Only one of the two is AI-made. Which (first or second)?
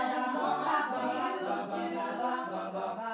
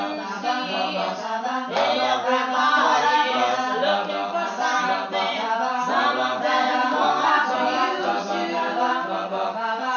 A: first